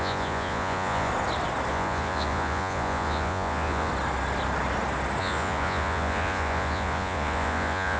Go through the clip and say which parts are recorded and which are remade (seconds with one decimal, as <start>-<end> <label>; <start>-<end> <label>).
0.0-1.1 remade; 1.1-1.7 recorded; 1.7-3.9 remade; 3.9-5.2 recorded; 5.2-8.0 remade